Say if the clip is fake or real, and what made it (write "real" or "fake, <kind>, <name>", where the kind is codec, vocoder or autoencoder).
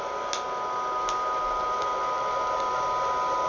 real